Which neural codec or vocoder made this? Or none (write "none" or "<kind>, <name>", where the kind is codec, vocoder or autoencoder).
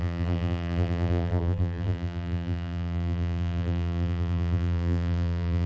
vocoder, BigVGAN v2